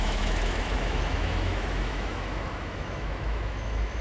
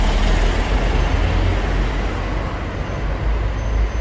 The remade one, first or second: first